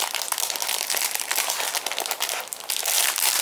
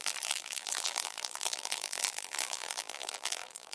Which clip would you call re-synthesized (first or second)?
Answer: second